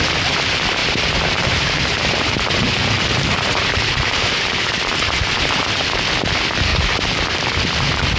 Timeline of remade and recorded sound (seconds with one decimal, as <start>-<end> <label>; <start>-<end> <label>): 0.0-0.8 recorded; 0.8-5.7 remade; 5.7-6.7 recorded; 6.7-7.2 remade; 7.2-8.2 recorded